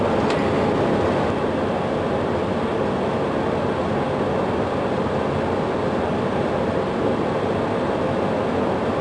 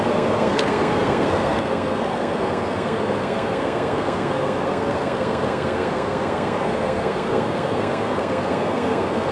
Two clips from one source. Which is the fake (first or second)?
second